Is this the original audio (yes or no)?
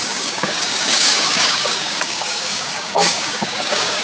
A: no